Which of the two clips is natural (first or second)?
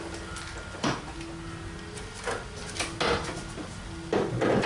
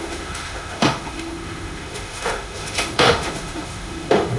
first